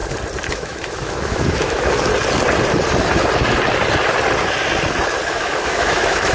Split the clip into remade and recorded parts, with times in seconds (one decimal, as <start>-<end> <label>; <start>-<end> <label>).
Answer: 0.0-0.5 recorded; 0.5-2.1 remade; 2.1-5.3 recorded; 5.3-6.3 remade